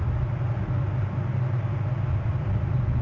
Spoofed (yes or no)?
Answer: no